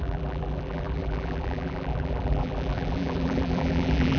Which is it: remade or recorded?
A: remade